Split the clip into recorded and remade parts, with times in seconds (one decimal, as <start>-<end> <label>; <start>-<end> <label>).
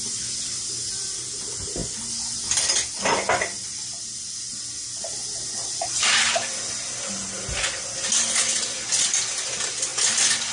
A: 0.0-10.5 recorded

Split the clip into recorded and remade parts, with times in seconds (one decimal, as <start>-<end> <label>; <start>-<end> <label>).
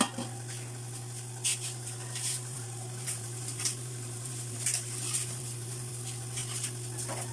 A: 0.0-1.5 recorded; 1.5-5.9 remade; 5.9-7.3 recorded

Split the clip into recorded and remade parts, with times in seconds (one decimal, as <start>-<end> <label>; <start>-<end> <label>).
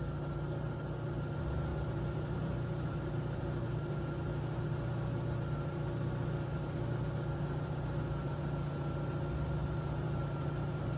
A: 0.0-1.7 recorded; 1.7-3.4 remade; 3.4-9.6 recorded; 9.6-11.0 remade